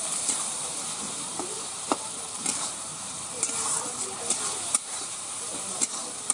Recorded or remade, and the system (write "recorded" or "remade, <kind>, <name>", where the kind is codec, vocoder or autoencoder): remade, vocoder, BigVGAN v2